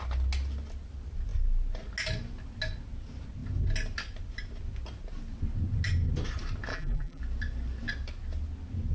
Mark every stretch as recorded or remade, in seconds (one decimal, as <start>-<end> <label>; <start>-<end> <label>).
0.0-6.7 recorded; 6.7-7.2 remade; 7.2-8.9 recorded